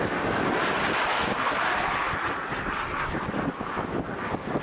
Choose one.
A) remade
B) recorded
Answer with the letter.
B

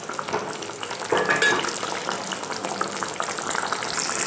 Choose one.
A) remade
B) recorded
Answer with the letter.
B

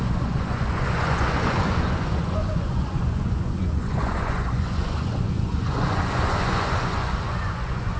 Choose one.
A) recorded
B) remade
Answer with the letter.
B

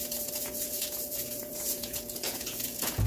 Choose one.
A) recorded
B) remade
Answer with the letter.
B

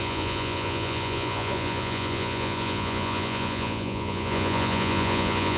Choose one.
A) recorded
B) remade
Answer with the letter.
B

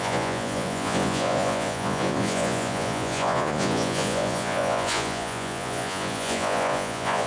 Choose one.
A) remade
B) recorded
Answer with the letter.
A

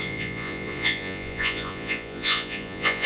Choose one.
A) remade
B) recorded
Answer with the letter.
A